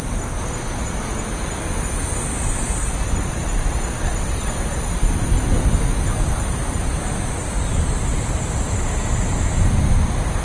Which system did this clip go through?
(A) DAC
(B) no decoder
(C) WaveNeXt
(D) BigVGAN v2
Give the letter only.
B